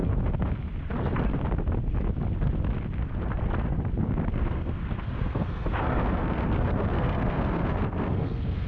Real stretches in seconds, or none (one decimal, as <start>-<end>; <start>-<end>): 0.0-4.3